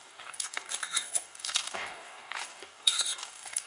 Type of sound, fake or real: fake